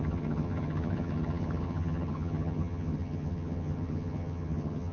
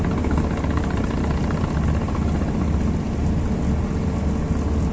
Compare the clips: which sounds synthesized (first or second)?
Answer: first